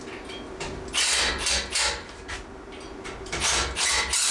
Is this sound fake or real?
real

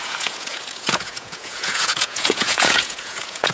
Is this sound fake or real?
fake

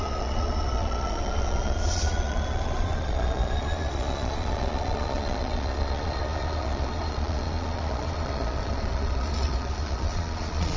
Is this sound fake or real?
fake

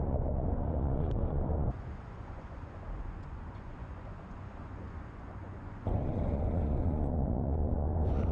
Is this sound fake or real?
fake